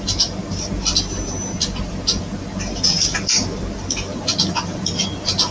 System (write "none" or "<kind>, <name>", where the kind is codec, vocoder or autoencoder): vocoder, BigVGAN v2